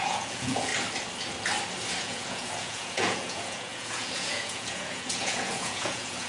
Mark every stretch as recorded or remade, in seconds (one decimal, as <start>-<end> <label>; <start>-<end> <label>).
0.0-0.7 remade; 0.7-2.0 recorded; 2.0-6.3 remade